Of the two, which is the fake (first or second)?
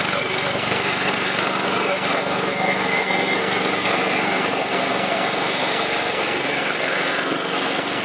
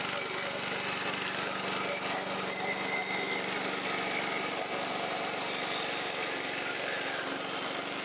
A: first